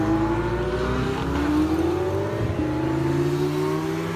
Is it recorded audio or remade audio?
recorded